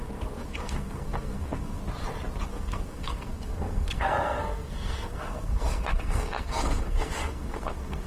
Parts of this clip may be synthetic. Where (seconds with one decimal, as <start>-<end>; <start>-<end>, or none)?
0.0-1.8; 2.5-8.1